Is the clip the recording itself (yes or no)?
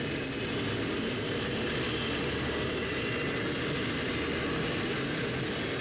yes